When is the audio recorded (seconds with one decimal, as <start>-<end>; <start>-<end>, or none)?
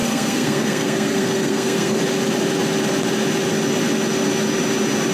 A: 2.0-5.1